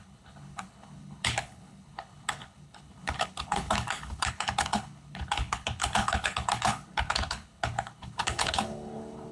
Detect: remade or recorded remade